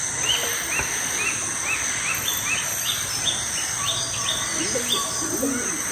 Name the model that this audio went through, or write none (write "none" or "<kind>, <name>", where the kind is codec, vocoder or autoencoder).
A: none